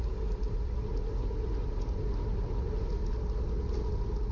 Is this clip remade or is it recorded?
recorded